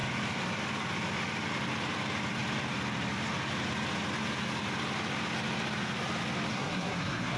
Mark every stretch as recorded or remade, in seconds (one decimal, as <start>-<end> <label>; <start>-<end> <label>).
0.0-6.5 recorded; 6.5-7.4 remade